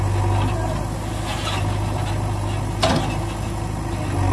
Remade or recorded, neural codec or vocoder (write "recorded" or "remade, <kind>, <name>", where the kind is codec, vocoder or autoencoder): recorded